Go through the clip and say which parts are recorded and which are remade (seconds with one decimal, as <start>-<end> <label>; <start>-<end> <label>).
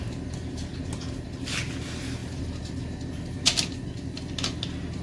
0.0-5.0 recorded